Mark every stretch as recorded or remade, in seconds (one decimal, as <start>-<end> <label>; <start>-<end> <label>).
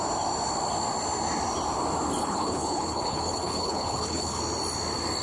0.0-2.2 recorded; 2.2-4.4 remade; 4.4-5.2 recorded